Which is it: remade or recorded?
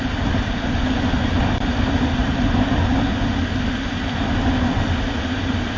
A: recorded